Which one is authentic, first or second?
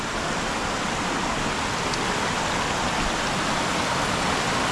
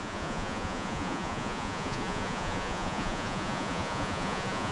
first